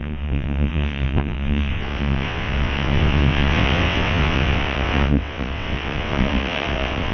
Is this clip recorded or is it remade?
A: remade